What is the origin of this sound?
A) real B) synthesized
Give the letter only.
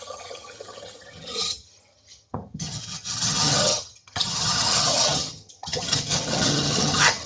B